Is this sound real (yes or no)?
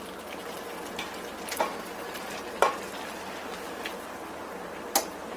yes